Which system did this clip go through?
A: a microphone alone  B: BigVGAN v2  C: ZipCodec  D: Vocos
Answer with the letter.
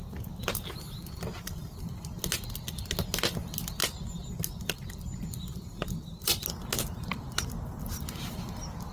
A